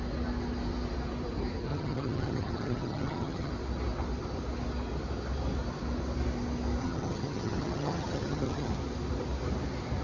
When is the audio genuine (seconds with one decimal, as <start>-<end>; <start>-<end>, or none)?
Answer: 0.0-1.7; 3.5-6.8; 8.7-10.0